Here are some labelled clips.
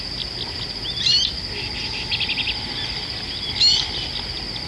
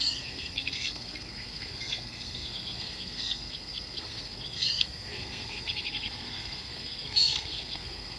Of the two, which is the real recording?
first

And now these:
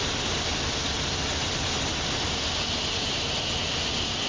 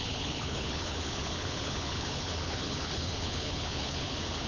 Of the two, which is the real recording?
first